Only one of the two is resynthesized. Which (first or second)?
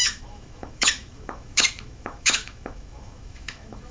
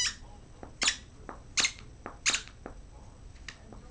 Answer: first